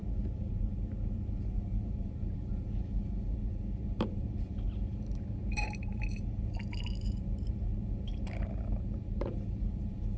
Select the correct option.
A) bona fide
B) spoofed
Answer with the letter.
B